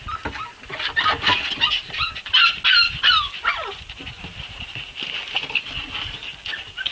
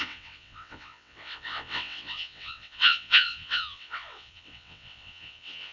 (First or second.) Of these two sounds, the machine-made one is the second